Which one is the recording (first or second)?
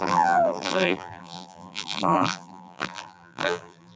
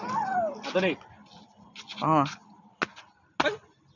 second